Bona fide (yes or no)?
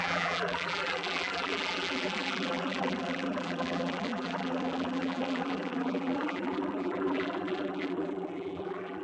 no